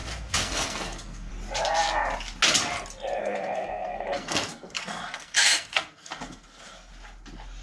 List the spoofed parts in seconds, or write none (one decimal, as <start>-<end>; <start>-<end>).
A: 0.0-1.3; 3.2-6.9